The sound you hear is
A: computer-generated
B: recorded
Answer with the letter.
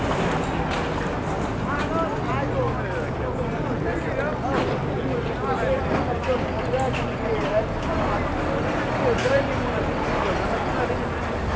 B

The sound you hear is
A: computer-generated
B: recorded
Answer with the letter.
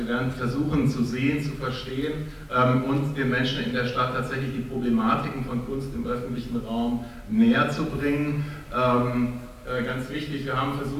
B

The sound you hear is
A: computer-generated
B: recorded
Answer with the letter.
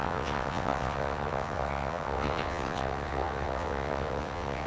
A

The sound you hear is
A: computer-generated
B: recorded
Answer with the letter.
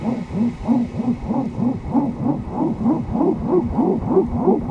B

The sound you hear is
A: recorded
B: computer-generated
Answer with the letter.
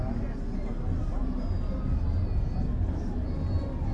A